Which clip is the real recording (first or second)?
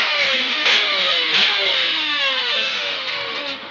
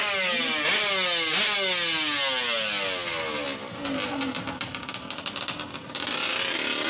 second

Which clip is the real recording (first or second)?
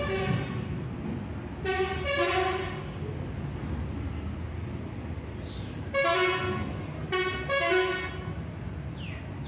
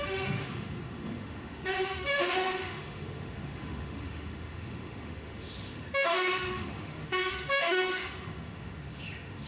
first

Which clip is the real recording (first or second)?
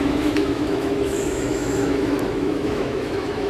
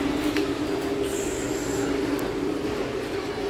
second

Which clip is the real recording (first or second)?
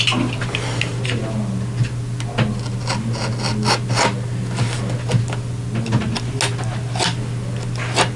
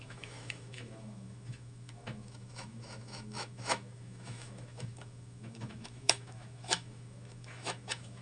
first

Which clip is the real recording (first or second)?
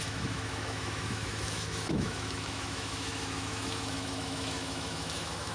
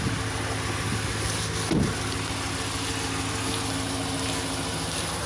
second